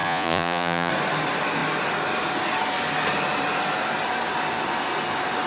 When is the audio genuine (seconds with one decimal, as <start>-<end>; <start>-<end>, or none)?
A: 0.9-5.5